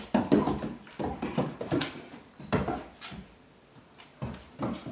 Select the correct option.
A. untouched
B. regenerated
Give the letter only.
A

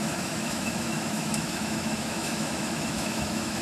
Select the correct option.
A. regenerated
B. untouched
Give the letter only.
A